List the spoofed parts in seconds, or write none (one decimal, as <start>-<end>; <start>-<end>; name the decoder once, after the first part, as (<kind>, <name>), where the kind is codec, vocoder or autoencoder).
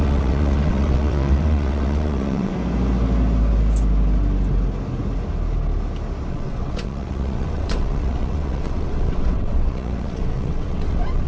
0.0-2.5 (vocoder, WaveNeXt); 6.3-11.3